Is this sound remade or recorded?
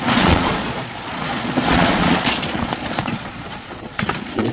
remade